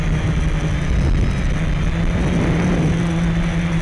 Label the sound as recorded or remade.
recorded